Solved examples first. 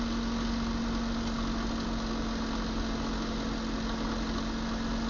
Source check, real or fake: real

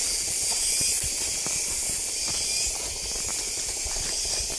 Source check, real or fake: real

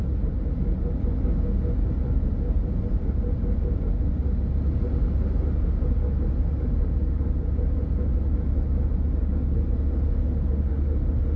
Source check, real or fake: real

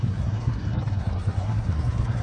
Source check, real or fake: fake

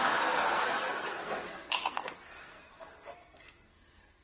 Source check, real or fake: fake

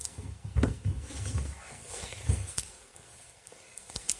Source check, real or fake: fake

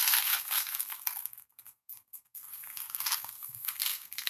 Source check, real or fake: fake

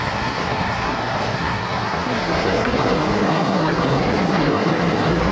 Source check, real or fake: fake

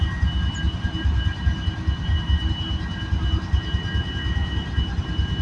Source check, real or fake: real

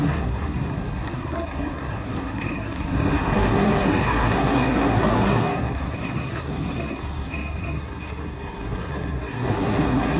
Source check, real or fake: fake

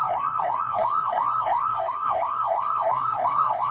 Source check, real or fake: fake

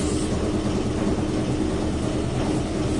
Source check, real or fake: real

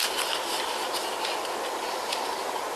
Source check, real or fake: real